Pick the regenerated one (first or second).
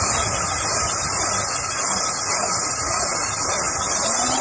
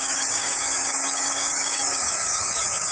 second